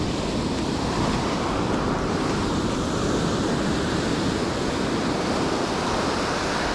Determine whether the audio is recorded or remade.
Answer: recorded